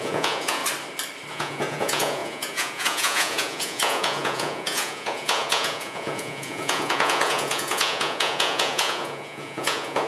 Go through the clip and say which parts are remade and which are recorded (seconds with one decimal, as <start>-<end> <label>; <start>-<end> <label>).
0.0-0.6 remade; 0.6-1.3 recorded; 1.3-10.1 remade